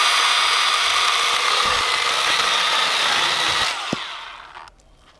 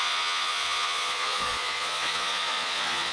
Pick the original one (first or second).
first